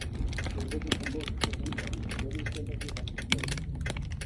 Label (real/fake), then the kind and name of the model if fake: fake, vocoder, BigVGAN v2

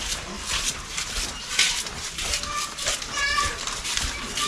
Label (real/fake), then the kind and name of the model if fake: real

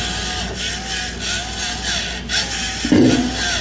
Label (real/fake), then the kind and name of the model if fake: real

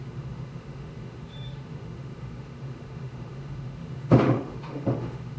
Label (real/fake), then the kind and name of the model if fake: fake, autoencoder, DAC-VAE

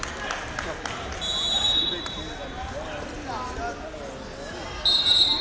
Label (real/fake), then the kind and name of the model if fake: real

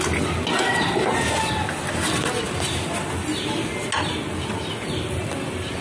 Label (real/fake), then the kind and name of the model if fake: real